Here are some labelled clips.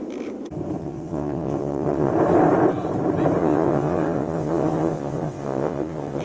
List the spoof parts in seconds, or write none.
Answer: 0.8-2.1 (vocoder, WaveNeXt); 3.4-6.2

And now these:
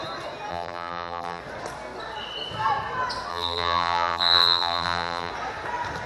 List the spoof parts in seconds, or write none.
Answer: 0.5-1.4 (vocoder, BigVGAN v2); 3.3-5.3

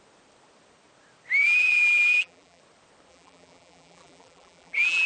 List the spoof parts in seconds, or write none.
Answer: 1.4-2.6 (vocoder, BigVGAN v2); 3.1-5.1